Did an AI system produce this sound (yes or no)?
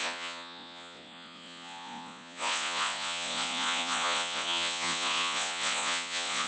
yes